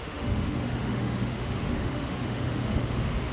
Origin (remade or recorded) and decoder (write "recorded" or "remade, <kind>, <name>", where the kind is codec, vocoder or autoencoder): remade, autoencoder, DAC-VAE